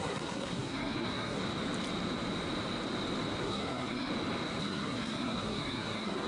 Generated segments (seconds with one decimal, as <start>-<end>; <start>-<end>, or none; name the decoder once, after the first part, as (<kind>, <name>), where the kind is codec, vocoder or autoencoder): 0.0-1.4 (codec, SNAC); 3.4-4.1; 4.6-6.3